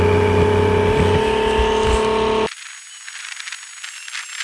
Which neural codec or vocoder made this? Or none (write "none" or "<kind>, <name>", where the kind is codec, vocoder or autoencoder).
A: none